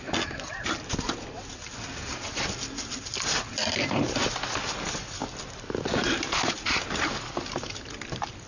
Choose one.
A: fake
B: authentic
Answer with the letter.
B